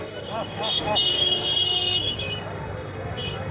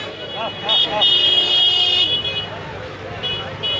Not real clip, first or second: first